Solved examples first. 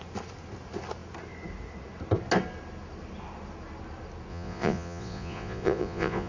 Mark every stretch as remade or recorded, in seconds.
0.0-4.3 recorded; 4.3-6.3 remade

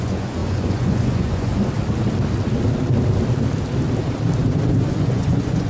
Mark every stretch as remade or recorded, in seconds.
0.0-1.5 remade; 1.5-4.9 recorded; 4.9-5.7 remade